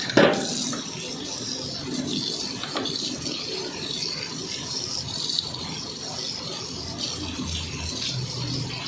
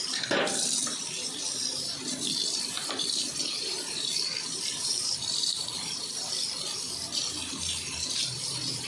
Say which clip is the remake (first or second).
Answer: second